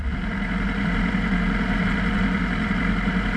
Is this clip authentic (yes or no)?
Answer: no